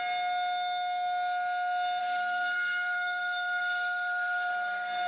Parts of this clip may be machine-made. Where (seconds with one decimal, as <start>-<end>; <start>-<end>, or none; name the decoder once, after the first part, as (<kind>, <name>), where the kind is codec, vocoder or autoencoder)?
2.0-5.1 (codec, SNAC)